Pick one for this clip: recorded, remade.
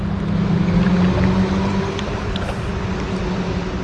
recorded